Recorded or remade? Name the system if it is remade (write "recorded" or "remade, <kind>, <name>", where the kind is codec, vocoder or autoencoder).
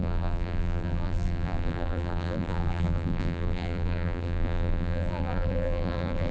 remade, vocoder, BigVGAN v2